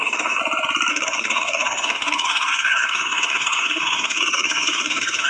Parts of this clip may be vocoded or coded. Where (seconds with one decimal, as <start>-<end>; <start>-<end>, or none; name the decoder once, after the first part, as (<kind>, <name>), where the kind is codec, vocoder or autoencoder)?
0.0-0.4 (codec, SNAC); 0.9-5.3